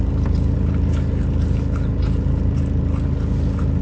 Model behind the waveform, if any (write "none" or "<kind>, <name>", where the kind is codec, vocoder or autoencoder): none